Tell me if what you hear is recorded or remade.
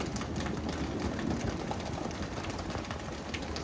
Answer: recorded